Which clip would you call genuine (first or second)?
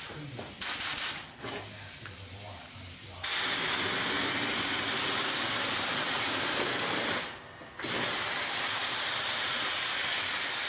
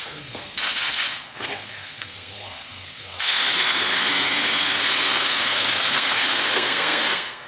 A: first